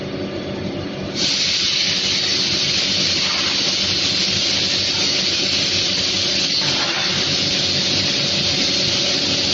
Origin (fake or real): real